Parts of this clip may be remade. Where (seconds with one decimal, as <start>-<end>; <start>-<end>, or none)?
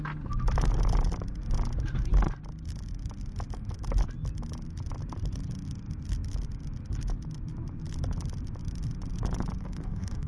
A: 9.6-10.3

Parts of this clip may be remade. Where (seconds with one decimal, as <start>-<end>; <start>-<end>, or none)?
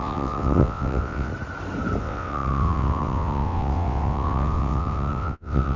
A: 0.0-1.3; 2.0-5.8